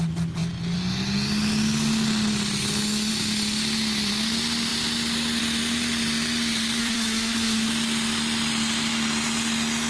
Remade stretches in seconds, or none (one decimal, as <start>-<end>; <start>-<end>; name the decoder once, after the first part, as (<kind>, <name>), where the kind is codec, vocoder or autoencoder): 6.8-7.7 (codec, SNAC)